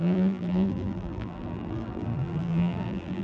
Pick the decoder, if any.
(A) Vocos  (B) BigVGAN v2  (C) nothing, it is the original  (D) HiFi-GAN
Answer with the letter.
B